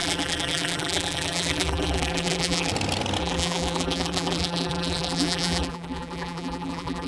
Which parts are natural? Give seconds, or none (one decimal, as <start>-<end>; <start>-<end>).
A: 2.7-3.2